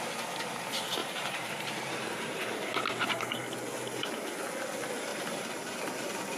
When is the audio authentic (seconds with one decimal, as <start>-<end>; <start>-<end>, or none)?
0.0-1.0; 3.4-5.1; 5.8-6.4